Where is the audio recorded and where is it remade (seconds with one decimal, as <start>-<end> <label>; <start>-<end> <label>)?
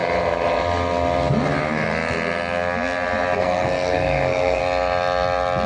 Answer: 0.0-3.4 recorded; 3.4-4.6 remade; 4.6-5.7 recorded